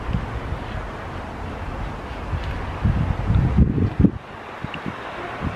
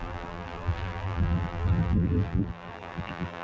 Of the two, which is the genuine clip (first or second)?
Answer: first